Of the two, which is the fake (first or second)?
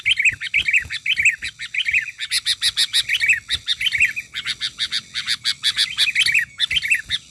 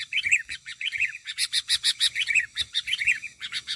second